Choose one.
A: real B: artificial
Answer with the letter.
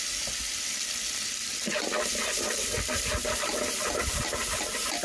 B